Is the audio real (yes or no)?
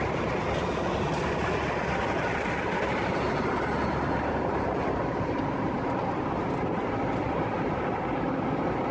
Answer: yes